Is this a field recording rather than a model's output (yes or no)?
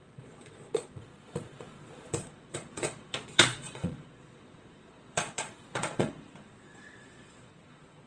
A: no